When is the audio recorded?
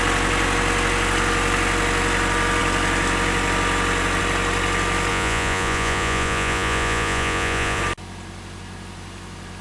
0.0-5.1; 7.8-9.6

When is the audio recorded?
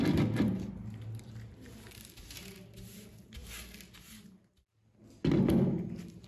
0.0-6.3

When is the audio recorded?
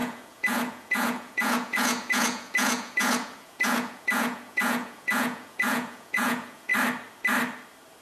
6.7-8.0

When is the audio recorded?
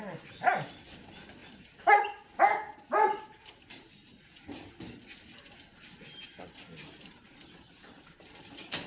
0.0-8.9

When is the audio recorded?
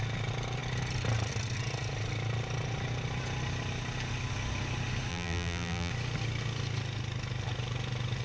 0.0-5.1; 5.9-8.2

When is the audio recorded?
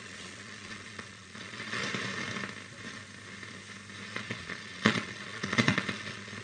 1.8-4.1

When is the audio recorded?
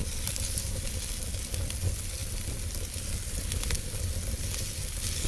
0.8-2.2; 3.5-5.3